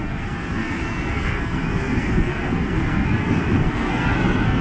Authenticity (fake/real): fake